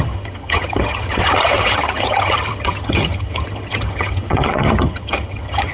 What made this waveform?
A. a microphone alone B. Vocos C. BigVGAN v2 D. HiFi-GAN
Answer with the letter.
D